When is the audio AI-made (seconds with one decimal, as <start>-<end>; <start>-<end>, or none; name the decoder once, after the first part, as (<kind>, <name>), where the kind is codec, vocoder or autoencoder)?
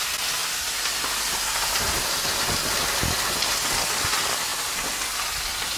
none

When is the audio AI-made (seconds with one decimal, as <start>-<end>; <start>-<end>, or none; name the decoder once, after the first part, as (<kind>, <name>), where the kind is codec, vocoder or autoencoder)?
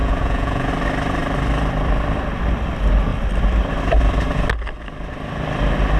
0.0-0.7 (vocoder, Vocos)